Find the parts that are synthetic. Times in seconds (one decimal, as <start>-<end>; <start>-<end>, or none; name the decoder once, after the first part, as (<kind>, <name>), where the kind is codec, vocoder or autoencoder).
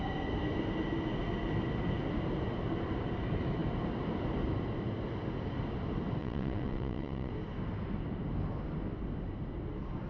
6.2-7.3 (vocoder, WaveNeXt)